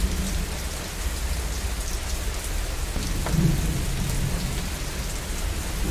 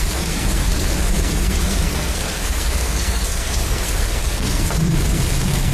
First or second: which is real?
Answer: first